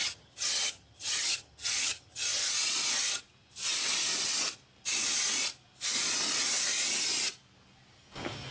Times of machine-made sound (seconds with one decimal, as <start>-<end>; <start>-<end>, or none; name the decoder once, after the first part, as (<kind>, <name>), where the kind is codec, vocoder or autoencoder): 0.0-2.5 (vocoder, HiFi-GAN)